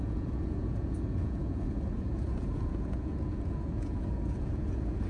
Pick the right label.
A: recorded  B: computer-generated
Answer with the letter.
B